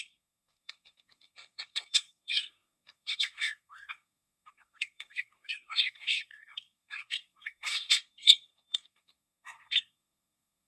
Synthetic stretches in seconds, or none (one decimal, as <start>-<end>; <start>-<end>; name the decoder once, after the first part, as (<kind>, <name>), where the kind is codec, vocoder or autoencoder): 0.0-10.7 (codec, SNAC)

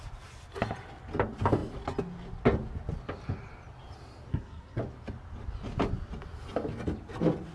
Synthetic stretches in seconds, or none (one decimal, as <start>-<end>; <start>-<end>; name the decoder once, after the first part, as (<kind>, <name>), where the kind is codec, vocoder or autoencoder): 4.3-4.8 (codec, SNAC)

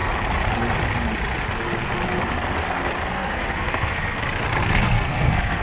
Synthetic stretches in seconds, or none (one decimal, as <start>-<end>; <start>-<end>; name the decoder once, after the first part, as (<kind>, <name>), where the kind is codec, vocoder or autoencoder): 3.1-4.2 (codec, SNAC); 4.7-5.6

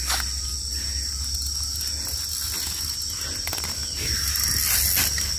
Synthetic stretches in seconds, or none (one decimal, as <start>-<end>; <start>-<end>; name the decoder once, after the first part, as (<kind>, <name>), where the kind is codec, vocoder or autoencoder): none

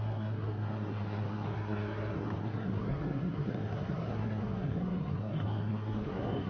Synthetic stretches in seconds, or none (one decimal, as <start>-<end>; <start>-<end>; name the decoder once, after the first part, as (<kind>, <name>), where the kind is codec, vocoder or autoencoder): 0.0-6.5 (codec, SNAC)

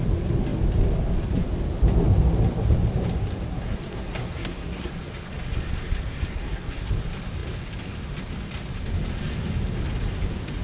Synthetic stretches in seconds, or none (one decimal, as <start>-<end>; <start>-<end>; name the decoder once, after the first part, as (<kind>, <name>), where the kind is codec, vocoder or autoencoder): 3.5-4.9 (codec, SNAC); 6.3-6.9